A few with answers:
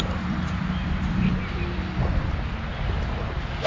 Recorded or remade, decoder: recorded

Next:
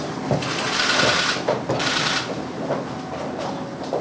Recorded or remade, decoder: recorded